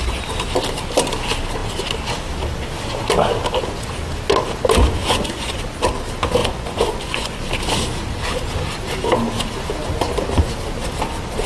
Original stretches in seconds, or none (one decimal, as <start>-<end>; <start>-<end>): 0.0-5.0; 5.6-6.4; 7.4-11.5